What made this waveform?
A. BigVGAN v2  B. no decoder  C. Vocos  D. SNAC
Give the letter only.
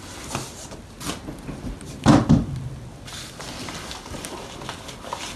B